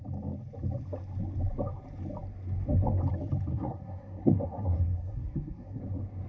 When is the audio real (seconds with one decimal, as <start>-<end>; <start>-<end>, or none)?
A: 0.0-3.5; 5.8-6.3